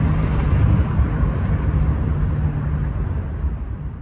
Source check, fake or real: real